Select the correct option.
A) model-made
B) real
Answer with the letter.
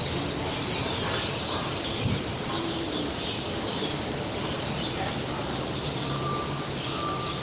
A